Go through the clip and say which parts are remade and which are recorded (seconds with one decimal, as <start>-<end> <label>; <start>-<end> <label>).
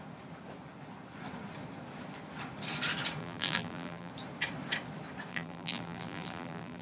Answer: 0.0-3.2 recorded; 3.2-4.1 remade; 4.1-5.3 recorded; 5.3-6.8 remade